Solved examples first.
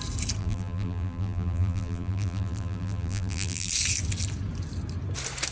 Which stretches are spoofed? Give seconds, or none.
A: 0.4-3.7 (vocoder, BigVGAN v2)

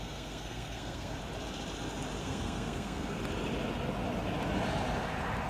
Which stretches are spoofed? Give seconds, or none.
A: 0.0-1.2 (codec, SNAC); 2.2-3.2